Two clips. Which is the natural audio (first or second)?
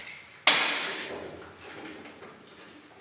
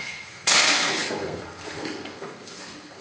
first